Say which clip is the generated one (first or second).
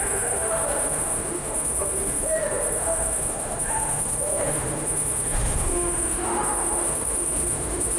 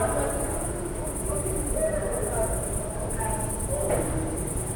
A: first